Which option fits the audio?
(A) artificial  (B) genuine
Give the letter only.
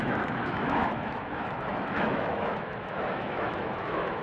A